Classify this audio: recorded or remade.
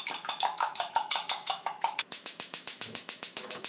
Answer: remade